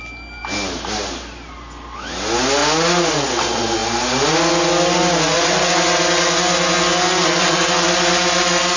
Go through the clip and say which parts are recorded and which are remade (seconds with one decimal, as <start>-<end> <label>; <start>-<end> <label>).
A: 0.0-8.8 recorded